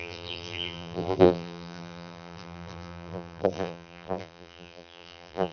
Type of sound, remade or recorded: remade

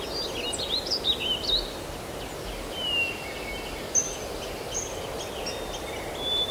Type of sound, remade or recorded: recorded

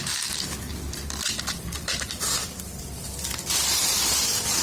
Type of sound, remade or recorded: recorded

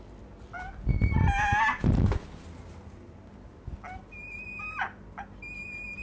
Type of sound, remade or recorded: recorded